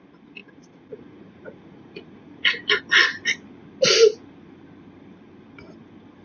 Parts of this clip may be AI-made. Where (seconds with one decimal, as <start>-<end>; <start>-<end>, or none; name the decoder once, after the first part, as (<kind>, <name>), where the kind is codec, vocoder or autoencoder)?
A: 0.4-2.8 (vocoder, Vocos)